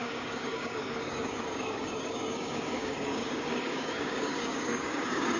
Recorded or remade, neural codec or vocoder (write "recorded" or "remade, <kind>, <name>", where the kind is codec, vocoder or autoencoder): remade, codec, DAC